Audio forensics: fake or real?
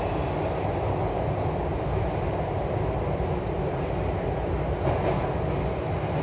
real